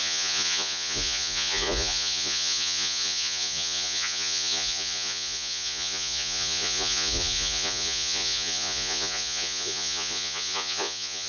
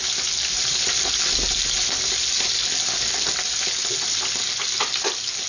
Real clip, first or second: second